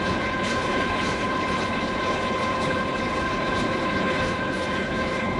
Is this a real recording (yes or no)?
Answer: no